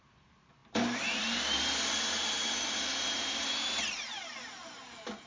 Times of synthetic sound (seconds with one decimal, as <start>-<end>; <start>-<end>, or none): 0.0-5.3